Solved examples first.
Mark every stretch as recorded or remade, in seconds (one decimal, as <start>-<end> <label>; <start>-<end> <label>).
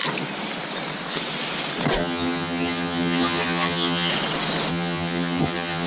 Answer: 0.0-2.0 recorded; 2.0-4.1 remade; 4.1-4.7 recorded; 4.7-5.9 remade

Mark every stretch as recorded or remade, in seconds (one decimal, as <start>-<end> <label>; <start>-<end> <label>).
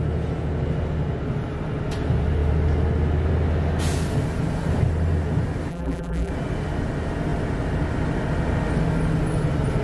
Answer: 0.0-5.7 recorded; 5.7-6.3 remade; 6.3-9.8 recorded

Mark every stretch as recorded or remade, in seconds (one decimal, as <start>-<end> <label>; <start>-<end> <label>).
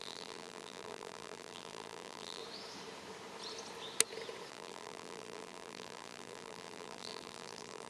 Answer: 0.0-2.4 remade; 2.4-4.5 recorded; 4.5-7.9 remade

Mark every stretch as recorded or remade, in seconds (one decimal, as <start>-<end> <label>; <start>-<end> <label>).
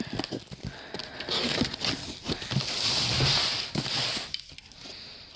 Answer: 0.0-5.4 recorded